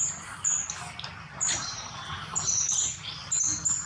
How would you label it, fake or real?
real